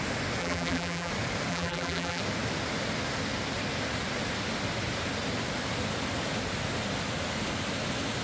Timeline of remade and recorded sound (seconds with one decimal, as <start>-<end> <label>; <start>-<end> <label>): 0.0-0.4 recorded; 0.4-1.1 remade; 1.1-1.5 recorded; 1.5-2.2 remade; 2.2-8.2 recorded